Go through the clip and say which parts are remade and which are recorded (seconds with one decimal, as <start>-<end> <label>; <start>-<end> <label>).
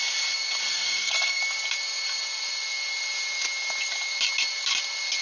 0.0-0.7 recorded; 0.7-1.4 remade; 1.4-5.2 recorded